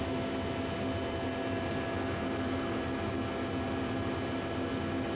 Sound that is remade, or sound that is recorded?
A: recorded